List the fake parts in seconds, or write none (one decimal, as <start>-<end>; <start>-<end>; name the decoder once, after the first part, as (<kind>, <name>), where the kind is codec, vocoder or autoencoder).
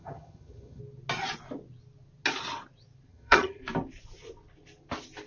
0.0-0.8 (vocoder, HiFi-GAN); 3.1-3.6